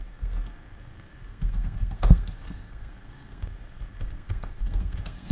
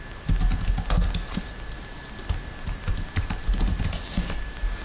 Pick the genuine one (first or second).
second